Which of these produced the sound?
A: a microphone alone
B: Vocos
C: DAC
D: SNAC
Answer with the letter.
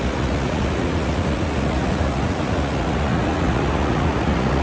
B